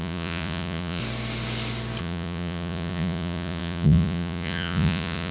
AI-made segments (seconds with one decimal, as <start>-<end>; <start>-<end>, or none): 0.0-1.0; 2.0-5.3